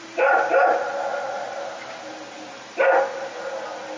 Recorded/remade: recorded